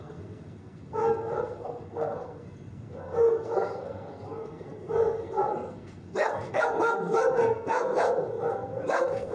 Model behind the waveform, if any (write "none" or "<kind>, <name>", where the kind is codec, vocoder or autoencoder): codec, SNAC